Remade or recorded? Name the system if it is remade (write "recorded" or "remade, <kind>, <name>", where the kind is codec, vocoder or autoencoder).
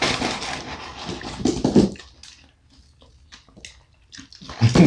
recorded